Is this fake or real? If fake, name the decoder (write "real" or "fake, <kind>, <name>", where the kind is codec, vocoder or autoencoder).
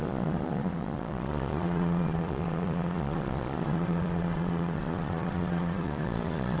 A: fake, vocoder, Vocos